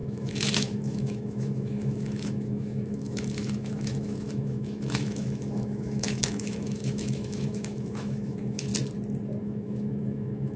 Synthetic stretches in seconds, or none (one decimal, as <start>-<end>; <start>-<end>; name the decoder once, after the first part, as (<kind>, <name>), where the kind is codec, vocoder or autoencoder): 0.0-8.7 (autoencoder, DAC-VAE); 9.4-10.6

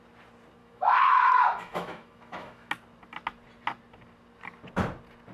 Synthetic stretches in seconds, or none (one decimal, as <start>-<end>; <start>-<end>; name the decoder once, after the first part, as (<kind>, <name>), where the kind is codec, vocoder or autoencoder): 0.6-2.7 (autoencoder, DAC-VAE)